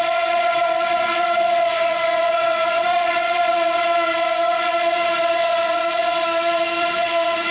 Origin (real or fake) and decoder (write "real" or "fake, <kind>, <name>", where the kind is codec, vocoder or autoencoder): fake, vocoder, Vocos